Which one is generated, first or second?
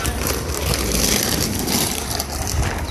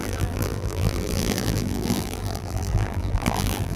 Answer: second